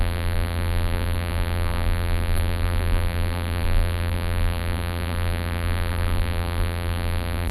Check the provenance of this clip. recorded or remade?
remade